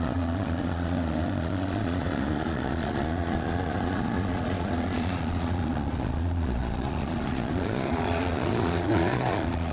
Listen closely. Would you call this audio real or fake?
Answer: fake